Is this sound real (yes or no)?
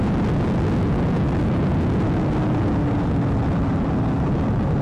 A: yes